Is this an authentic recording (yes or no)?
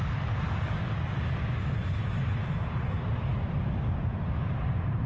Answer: yes